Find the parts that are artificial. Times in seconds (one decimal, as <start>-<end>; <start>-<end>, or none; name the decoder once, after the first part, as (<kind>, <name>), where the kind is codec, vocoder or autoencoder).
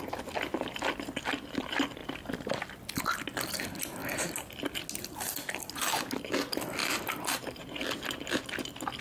none